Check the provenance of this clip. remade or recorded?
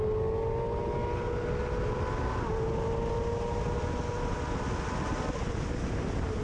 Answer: recorded